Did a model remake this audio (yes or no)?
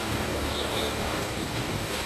yes